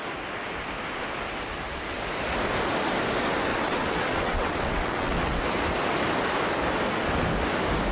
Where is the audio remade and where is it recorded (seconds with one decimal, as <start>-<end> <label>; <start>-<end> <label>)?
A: 0.0-3.5 recorded; 3.5-5.4 remade; 5.4-7.9 recorded